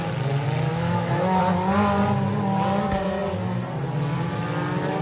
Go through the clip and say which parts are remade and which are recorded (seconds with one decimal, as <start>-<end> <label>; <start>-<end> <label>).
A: 0.0-0.7 recorded; 0.7-1.4 remade; 1.4-5.0 recorded